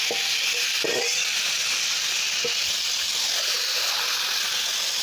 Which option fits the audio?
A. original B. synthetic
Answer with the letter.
A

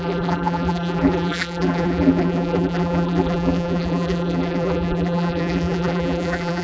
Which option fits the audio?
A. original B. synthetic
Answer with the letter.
B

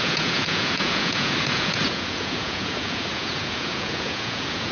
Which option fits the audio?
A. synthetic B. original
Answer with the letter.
A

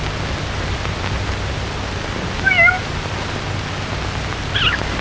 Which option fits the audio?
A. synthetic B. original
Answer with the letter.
B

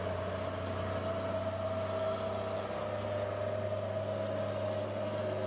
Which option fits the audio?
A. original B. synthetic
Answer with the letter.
A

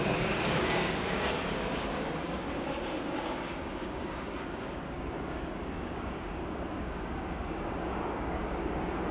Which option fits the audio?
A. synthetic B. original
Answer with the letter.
A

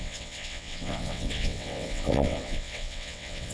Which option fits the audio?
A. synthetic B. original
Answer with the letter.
A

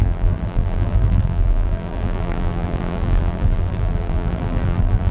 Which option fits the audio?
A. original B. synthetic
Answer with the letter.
B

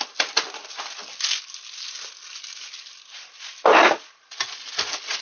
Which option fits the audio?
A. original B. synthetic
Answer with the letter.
A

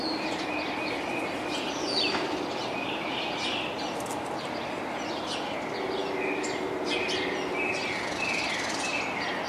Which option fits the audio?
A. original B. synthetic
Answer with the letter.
A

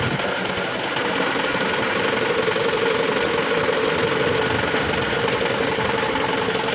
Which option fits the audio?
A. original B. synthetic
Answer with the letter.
A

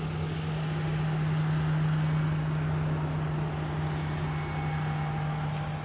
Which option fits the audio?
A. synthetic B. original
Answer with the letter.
B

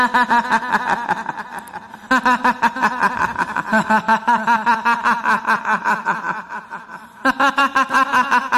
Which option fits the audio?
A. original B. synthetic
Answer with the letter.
A